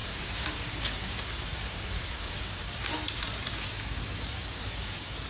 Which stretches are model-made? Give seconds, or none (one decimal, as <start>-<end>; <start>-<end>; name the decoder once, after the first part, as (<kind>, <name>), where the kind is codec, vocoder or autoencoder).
0.0-3.2 (codec, DAC); 3.7-5.3